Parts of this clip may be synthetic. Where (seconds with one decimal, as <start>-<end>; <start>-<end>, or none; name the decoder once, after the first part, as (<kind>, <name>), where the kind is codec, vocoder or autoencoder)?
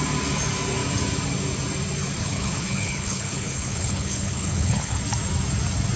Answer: 2.2-5.0 (codec, HILCodec)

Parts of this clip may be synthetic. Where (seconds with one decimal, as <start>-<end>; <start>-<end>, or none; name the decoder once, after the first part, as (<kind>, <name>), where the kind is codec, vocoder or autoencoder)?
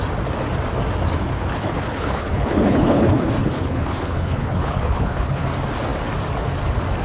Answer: 1.3-5.4 (codec, HILCodec)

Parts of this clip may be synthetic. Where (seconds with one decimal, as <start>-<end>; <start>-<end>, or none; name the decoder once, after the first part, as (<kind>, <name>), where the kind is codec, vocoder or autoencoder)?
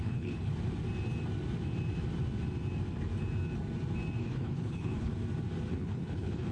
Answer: 0.0-0.5 (codec, HILCodec); 4.2-5.1; 5.7-6.5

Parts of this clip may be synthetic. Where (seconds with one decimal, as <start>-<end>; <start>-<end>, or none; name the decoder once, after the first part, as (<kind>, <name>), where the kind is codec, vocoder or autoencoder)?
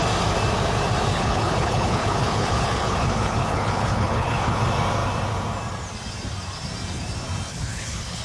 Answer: 1.1-4.6 (codec, HILCodec); 7.5-8.2